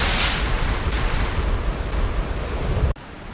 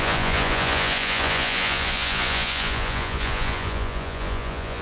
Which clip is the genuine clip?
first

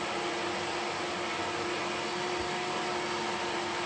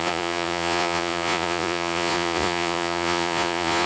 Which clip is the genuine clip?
first